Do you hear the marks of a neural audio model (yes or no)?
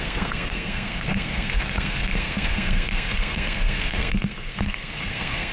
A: yes